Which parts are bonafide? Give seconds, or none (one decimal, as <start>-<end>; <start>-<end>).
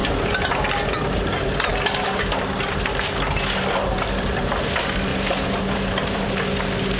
0.0-5.1; 6.3-7.0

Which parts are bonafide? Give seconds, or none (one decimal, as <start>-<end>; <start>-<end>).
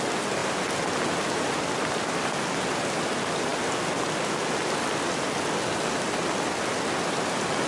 0.0-7.7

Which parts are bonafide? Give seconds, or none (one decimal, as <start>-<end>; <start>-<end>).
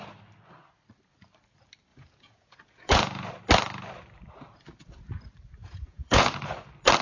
0.0-1.9; 3.3-5.6; 6.5-7.0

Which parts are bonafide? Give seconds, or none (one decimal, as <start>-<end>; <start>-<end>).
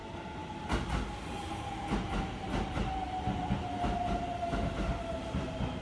0.0-5.8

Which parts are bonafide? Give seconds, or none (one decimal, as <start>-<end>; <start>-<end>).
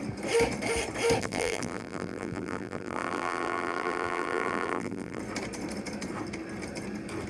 0.0-1.2; 5.2-7.3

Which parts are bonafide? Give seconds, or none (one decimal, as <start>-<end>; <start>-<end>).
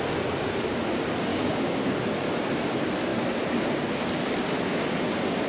0.0-1.3; 2.0-5.5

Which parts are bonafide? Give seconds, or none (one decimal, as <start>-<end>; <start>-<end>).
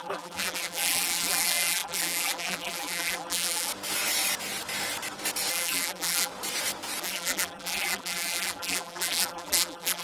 3.7-5.5; 6.3-7.0